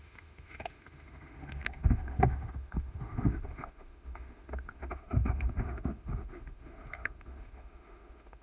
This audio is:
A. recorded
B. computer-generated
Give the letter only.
B